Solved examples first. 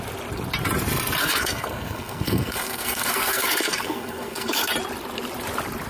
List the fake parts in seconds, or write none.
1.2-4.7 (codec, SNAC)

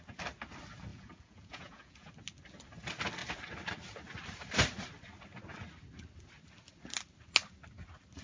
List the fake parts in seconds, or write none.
0.9-2.1 (vocoder, Vocos)

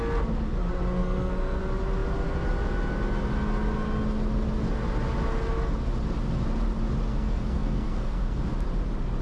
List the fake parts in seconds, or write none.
1.0-1.6 (codec, SNAC); 7.1-8.4

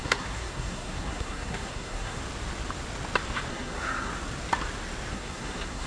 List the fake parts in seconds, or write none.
0.0-2.2 (codec, SNAC); 3.5-4.1; 5.1-5.9